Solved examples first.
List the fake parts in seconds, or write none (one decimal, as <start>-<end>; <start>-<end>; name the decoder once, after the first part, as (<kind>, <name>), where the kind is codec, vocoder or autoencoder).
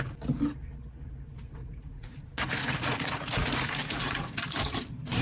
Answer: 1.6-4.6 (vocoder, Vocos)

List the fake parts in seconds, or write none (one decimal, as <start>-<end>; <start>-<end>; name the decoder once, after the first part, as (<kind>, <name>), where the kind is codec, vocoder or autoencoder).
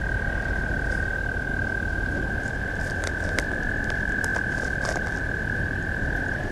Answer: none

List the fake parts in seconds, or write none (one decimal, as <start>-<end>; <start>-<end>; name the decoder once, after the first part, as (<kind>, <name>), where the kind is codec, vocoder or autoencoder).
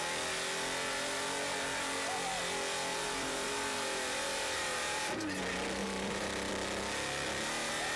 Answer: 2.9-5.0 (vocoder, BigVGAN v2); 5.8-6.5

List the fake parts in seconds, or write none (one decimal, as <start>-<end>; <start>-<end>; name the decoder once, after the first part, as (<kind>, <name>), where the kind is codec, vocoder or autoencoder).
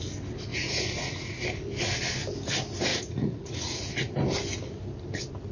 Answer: 0.5-1.4 (vocoder, Vocos); 2.9-4.1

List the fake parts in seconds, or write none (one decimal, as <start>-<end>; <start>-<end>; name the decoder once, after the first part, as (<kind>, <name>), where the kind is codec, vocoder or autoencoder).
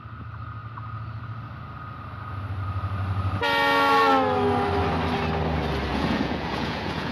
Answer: 5.9-7.1 (vocoder, Vocos)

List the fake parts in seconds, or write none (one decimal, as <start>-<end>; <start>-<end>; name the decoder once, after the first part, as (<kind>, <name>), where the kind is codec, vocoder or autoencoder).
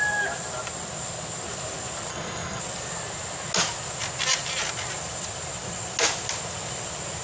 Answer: 2.1-2.6 (codec, SNAC)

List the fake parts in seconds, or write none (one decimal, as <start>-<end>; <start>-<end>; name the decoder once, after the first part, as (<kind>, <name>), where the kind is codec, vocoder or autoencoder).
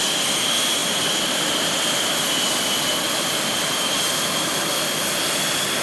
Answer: none